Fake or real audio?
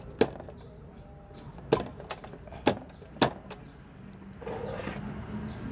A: real